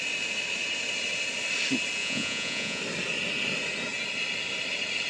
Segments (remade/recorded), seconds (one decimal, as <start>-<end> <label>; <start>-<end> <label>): 0.0-2.0 recorded; 2.0-2.8 remade; 2.8-5.1 recorded